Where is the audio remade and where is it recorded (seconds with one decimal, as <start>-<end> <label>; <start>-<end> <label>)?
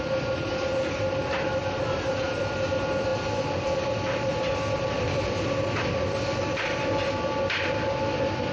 0.0-8.5 recorded